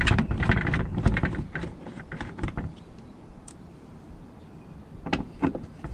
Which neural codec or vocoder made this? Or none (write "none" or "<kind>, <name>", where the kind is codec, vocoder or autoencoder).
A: vocoder, BigVGAN v2